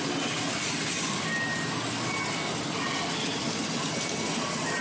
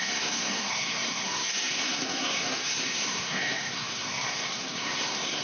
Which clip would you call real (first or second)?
first